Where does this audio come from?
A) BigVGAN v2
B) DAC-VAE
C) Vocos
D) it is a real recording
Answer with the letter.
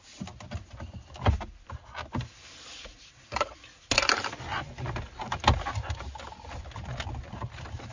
D